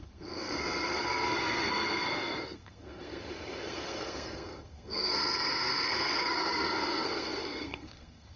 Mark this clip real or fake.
fake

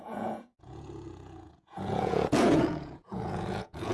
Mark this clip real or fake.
fake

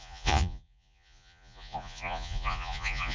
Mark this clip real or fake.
fake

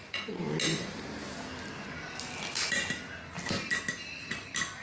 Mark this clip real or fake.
real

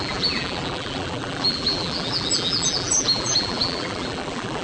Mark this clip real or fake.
fake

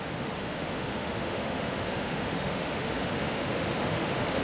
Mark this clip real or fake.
fake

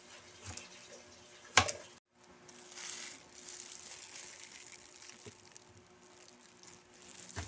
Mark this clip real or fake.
real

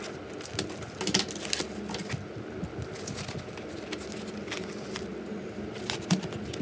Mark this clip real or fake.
real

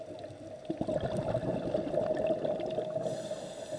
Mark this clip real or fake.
real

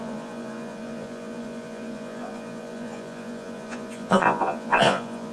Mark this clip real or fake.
fake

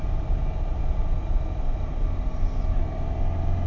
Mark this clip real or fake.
real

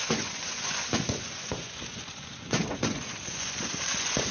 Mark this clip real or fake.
fake